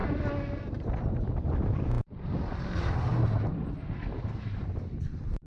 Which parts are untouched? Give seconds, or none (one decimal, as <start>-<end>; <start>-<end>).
0.0-2.5; 3.1-5.5